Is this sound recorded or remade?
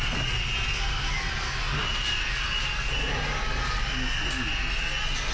recorded